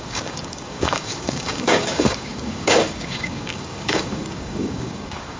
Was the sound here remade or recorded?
remade